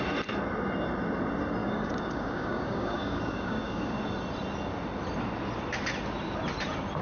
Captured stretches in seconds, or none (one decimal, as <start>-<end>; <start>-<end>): 0.0-1.6; 4.0-7.0